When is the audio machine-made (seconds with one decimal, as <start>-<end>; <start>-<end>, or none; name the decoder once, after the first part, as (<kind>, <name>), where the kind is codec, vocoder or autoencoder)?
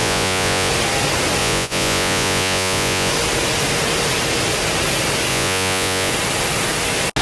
0.0-0.7 (vocoder, Vocos); 1.4-3.1; 5.3-6.1